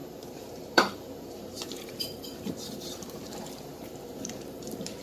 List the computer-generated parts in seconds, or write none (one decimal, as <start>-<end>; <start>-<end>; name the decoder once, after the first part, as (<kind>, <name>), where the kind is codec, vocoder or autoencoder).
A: 0.0-5.0 (vocoder, BigVGAN v2)